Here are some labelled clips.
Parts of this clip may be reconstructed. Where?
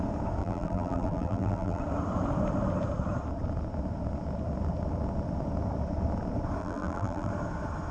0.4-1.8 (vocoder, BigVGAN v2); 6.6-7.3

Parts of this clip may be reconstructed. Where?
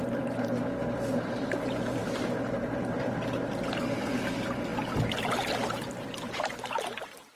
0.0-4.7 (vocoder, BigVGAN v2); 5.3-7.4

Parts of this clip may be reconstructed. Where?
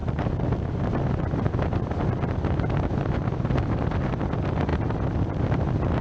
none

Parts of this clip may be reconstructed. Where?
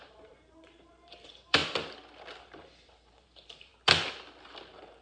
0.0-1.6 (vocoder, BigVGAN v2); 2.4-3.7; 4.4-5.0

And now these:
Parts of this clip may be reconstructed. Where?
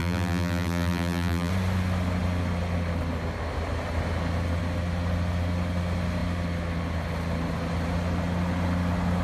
0.0-1.5 (vocoder, BigVGAN v2)